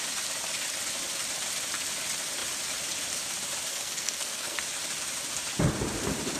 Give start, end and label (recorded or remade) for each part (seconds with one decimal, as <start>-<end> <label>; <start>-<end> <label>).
0.0-3.7 recorded; 3.7-4.6 remade; 4.6-6.4 recorded